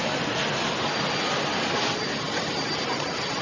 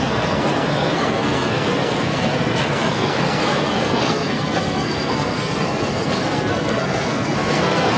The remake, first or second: second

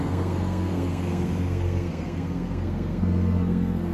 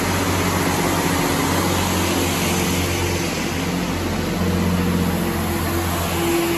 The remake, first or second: first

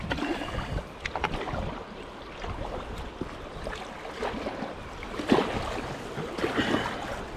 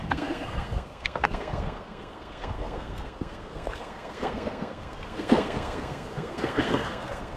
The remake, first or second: second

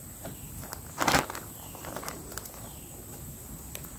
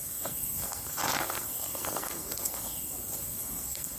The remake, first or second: second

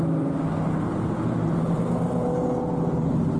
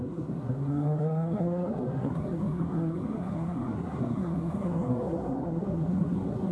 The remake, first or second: second